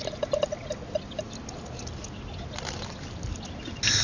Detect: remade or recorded recorded